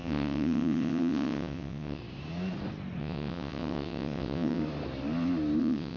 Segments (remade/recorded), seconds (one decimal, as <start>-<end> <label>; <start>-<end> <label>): 0.0-2.0 remade; 2.0-3.0 recorded; 3.0-4.6 remade; 4.6-5.6 recorded; 5.6-6.0 remade